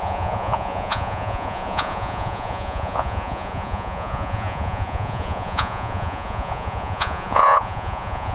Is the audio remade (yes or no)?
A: yes